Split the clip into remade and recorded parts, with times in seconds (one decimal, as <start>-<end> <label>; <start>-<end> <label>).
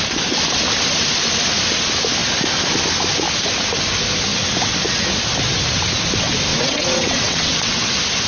0.0-6.5 recorded; 6.5-7.9 remade; 7.9-8.3 recorded